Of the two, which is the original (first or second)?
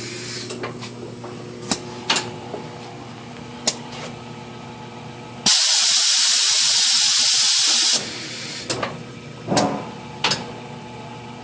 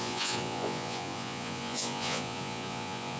first